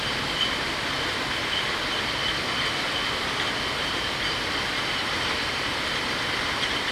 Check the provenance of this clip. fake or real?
real